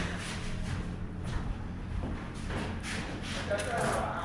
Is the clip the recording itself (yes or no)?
yes